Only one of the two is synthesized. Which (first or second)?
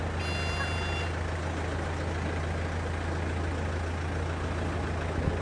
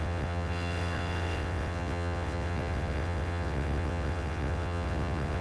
second